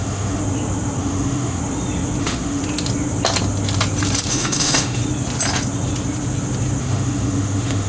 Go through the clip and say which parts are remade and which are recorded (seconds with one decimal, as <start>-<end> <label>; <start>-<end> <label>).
0.0-0.4 remade; 0.4-1.0 recorded; 1.0-1.6 remade; 1.6-2.2 recorded; 2.2-2.6 remade; 2.6-4.3 recorded; 4.3-5.0 remade; 5.0-6.8 recorded; 6.8-7.9 remade